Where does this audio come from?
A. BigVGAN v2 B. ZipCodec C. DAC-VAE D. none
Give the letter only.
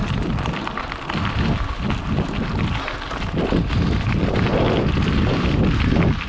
D